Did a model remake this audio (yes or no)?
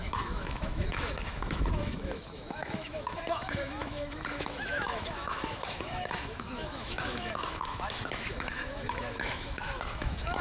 yes